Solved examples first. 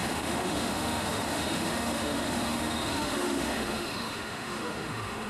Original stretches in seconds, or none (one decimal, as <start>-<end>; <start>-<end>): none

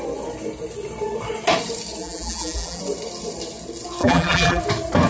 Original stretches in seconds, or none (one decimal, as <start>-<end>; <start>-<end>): 0.0-2.0; 2.8-4.0; 4.6-5.1

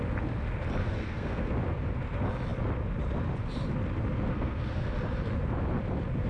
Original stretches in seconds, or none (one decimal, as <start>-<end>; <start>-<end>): 0.0-0.8; 1.5-4.3; 4.9-6.3

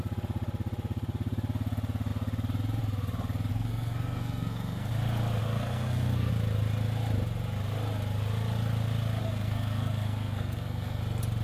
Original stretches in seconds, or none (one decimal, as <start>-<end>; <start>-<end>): 0.0-3.5; 4.9-5.4; 6.3-9.2; 11.0-11.4

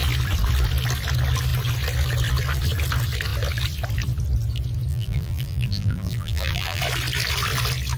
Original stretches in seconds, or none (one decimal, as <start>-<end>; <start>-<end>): 0.0-4.9; 6.8-8.0